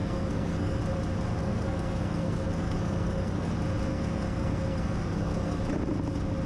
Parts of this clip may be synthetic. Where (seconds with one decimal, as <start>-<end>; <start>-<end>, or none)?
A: 0.0-0.8; 1.4-3.5; 3.9-5.6